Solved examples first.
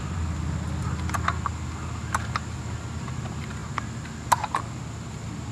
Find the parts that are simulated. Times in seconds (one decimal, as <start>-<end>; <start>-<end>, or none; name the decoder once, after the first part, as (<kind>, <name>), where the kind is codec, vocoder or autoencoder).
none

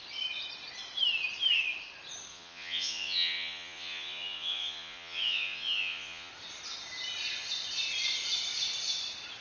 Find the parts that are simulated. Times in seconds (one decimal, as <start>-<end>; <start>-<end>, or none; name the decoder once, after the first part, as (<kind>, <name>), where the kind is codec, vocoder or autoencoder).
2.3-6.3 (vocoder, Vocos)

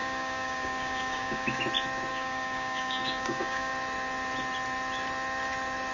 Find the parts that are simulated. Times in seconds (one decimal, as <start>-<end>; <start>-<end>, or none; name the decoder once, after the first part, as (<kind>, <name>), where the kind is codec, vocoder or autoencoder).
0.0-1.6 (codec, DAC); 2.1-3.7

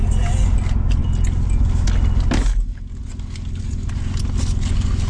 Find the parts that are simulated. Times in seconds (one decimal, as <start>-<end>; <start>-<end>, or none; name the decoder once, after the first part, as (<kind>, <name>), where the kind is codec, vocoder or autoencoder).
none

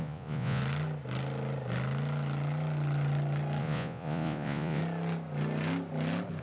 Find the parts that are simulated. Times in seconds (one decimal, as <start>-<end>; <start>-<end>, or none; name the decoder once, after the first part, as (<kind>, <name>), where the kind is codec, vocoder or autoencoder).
0.0-0.6 (vocoder, Vocos); 3.6-4.8

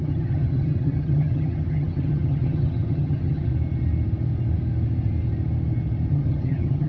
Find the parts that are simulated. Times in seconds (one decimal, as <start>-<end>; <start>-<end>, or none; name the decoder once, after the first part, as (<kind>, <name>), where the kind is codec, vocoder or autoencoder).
0.0-3.5 (vocoder, HiFi-GAN); 6.1-6.9